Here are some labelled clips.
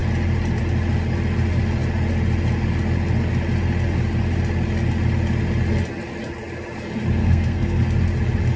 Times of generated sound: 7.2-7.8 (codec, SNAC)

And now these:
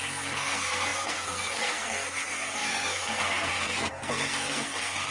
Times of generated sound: 0.0-5.1 (codec, SNAC)

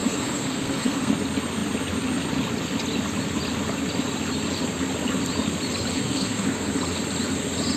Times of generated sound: 0.0-1.1 (codec, SNAC); 5.9-6.7

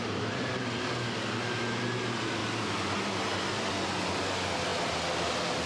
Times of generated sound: none

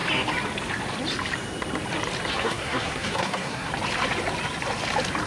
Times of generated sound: 2.3-3.7 (codec, SNAC)